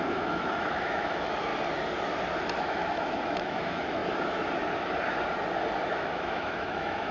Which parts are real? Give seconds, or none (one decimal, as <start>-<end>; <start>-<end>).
1.5-2.6; 4.0-5.9